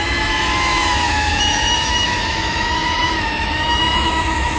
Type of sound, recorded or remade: remade